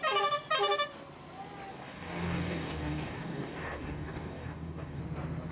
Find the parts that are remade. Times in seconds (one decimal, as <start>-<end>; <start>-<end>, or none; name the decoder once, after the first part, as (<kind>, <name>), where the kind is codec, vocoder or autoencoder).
1.7-5.0 (codec, DAC)

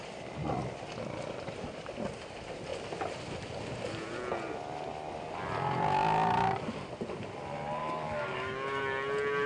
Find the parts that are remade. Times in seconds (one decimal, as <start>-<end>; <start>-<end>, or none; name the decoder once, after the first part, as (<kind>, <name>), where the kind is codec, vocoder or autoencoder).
7.8-8.8 (codec, DAC)

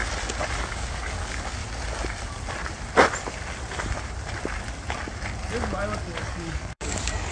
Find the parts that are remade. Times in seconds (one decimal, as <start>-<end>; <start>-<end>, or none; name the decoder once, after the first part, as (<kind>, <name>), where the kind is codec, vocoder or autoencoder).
0.6-1.6 (codec, DAC); 6.0-7.3

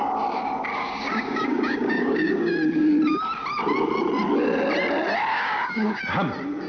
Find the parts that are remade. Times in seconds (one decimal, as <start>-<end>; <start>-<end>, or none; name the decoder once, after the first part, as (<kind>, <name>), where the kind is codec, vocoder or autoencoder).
0.7-2.5 (codec, DAC); 5.3-6.0